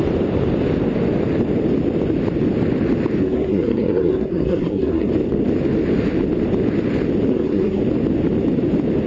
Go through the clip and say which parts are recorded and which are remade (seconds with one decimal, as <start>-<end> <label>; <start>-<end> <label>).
0.0-3.2 recorded; 3.2-5.1 remade; 5.1-7.3 recorded; 7.3-7.8 remade; 7.8-9.1 recorded